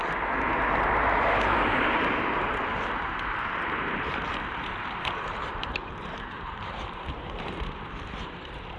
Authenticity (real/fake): fake